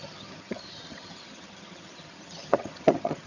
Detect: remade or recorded remade